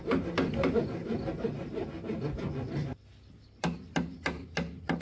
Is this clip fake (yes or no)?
no